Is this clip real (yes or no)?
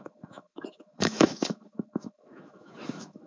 no